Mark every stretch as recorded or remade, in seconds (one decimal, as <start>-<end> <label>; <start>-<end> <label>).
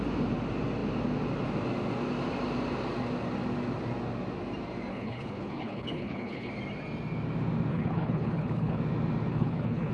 0.0-4.9 recorded; 4.9-6.5 remade; 6.5-7.7 recorded; 7.7-8.8 remade; 8.8-9.3 recorded; 9.3-9.9 remade